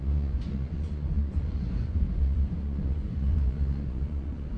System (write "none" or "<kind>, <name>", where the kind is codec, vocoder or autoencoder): vocoder, Vocos